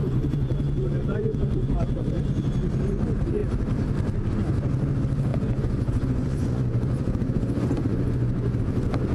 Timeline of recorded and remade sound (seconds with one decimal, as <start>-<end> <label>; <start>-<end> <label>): 0.0-2.4 remade; 2.4-5.3 recorded; 5.3-8.6 remade; 8.6-9.1 recorded